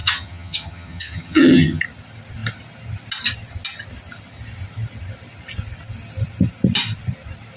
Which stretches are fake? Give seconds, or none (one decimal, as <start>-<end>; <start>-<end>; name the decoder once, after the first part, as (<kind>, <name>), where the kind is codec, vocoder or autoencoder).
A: 0.0-1.8 (vocoder, HiFi-GAN)